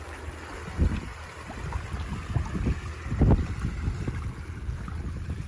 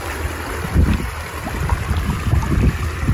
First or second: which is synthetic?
second